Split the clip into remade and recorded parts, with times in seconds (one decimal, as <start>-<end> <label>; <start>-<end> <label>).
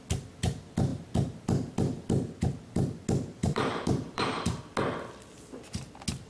0.0-3.4 recorded; 3.4-4.6 remade; 4.6-6.3 recorded